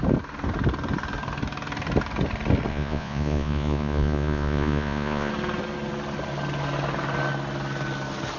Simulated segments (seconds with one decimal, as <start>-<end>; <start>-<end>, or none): 2.7-5.3